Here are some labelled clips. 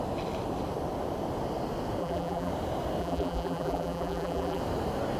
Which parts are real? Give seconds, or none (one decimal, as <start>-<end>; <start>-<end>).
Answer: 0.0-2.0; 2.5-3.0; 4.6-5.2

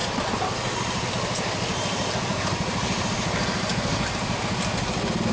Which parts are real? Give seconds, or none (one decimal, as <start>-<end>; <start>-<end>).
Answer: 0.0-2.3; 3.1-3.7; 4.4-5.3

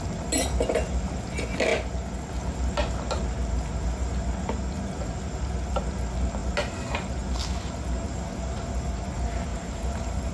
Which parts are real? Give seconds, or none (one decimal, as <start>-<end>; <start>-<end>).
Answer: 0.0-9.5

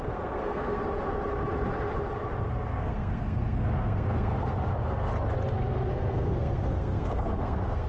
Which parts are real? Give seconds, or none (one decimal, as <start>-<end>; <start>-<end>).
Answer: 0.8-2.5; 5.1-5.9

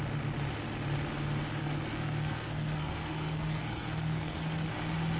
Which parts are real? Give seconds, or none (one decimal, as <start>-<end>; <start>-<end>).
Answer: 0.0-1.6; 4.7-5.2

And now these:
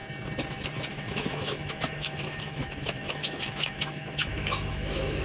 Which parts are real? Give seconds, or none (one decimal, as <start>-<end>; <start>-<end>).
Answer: 0.0-0.9

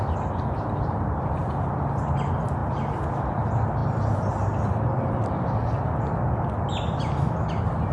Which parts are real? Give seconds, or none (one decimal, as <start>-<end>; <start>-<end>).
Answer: 0.0-7.9

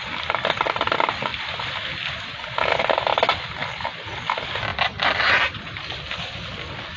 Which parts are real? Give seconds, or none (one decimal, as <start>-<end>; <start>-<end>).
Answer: 0.0-7.0